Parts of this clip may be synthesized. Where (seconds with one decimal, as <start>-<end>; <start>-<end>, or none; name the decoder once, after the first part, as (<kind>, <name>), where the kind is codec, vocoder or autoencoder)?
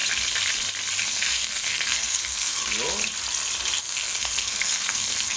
1.0-2.6 (codec, SNAC); 3.8-5.4